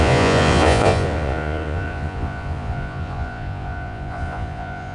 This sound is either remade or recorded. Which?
remade